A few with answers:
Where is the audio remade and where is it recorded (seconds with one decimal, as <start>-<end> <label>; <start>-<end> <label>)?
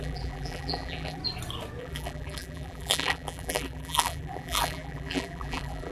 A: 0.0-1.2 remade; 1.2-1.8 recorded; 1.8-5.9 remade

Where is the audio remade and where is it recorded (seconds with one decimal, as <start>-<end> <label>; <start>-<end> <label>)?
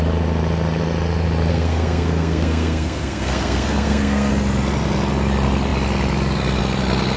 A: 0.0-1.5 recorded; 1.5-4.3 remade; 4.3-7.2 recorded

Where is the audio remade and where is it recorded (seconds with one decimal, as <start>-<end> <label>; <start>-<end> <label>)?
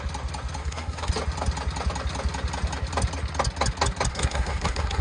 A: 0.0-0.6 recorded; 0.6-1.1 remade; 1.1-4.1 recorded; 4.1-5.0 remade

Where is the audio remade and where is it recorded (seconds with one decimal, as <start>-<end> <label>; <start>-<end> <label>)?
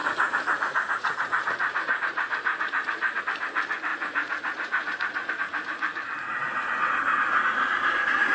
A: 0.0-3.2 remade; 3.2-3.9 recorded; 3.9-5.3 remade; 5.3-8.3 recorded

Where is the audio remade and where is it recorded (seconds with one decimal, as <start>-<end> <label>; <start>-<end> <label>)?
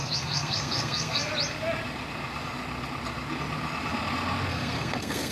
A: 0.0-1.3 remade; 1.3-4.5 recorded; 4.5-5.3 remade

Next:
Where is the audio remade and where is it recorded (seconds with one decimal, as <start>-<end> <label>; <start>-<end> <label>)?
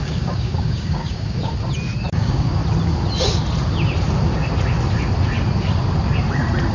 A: 0.0-1.5 remade; 1.5-2.1 recorded; 2.1-2.6 remade; 2.6-6.7 recorded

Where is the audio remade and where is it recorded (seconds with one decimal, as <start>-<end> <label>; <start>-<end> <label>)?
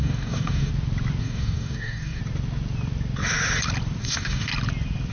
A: 0.0-0.7 remade; 0.7-1.2 recorded; 1.2-2.2 remade; 2.2-4.0 recorded; 4.0-4.5 remade; 4.5-5.1 recorded